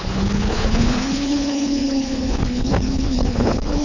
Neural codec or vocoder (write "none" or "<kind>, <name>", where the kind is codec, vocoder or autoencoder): codec, HILCodec